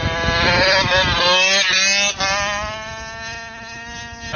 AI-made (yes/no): no